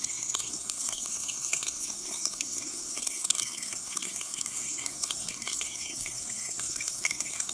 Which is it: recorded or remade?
remade